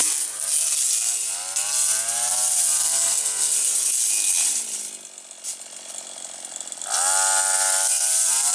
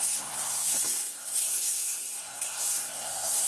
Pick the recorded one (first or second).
first